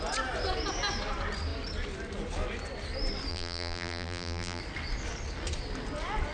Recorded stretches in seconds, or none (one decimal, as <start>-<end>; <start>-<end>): 0.0-3.3; 4.6-6.3